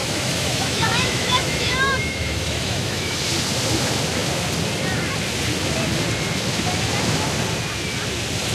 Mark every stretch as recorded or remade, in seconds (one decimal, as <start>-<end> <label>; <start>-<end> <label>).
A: 0.0-3.2 remade; 3.2-8.5 recorded